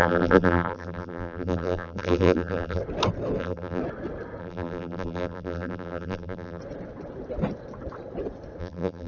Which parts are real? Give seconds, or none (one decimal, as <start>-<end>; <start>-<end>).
2.8-3.4; 3.8-4.4; 6.6-8.6